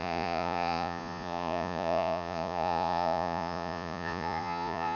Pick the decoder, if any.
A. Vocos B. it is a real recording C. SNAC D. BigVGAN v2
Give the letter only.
A